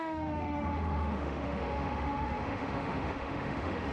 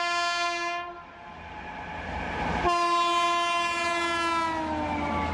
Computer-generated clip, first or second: first